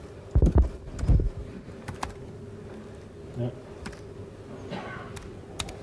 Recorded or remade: recorded